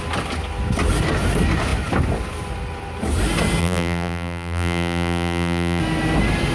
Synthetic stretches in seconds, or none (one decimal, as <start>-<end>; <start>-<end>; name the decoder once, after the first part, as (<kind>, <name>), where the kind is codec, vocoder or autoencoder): 3.6-5.8 (vocoder, BigVGAN v2)